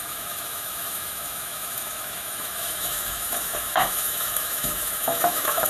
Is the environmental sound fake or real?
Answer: fake